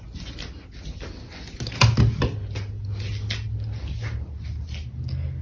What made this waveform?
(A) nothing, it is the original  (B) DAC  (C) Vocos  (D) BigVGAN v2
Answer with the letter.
A